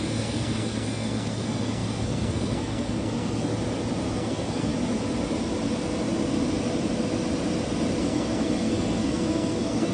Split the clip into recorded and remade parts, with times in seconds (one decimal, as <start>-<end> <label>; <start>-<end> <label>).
0.0-3.5 remade; 3.5-4.1 recorded; 4.1-4.7 remade; 4.7-8.0 recorded; 8.0-9.9 remade